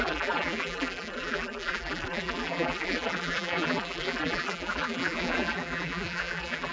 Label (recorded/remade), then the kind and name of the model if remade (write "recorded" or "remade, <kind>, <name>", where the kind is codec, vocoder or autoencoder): remade, vocoder, BigVGAN v2